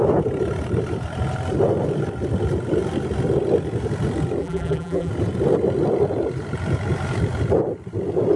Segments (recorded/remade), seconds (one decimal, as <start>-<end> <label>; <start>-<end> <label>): 0.0-4.4 recorded; 4.4-5.1 remade; 5.1-8.4 recorded